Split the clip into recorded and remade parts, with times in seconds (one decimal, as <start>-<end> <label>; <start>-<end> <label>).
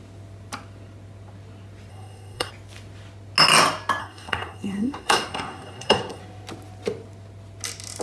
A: 0.0-1.9 recorded; 1.9-2.5 remade; 2.5-4.0 recorded; 4.0-6.2 remade; 6.2-8.0 recorded